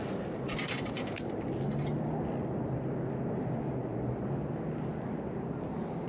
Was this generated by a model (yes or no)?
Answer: no